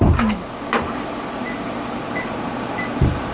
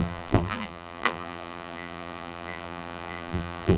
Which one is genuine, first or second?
first